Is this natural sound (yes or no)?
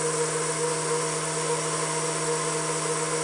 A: yes